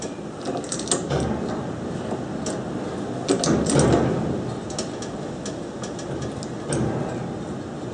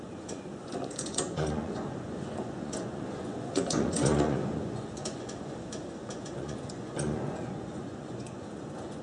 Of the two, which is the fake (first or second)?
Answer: second